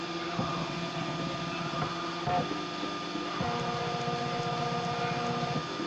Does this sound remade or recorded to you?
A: recorded